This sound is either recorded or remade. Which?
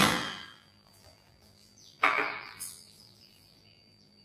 remade